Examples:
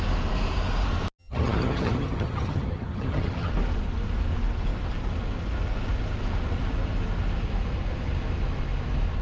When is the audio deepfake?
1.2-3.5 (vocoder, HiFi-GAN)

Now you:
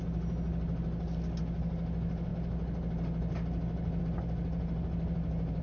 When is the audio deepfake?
none

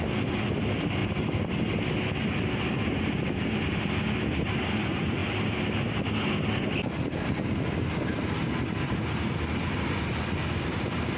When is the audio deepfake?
none

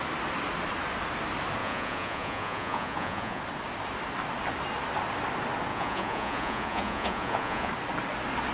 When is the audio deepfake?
1.6-3.4 (vocoder, Vocos); 5.7-7.7

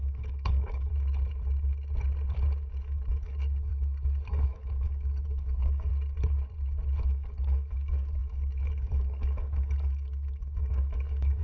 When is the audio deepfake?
0.0-0.9 (codec, DAC); 2.7-3.7; 4.3-5.9; 7.0-11.4